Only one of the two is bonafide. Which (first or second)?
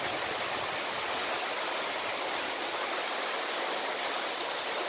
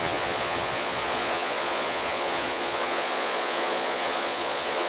first